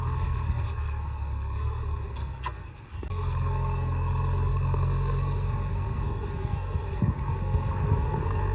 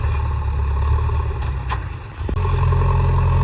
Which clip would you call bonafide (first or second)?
second